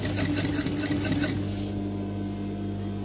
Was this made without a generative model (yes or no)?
yes